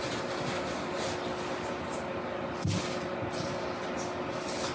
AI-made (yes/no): no